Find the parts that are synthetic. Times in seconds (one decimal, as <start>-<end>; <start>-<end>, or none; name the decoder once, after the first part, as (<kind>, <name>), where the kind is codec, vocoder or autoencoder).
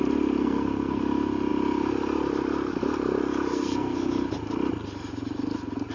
0.4-1.0 (codec, SNAC); 3.5-4.1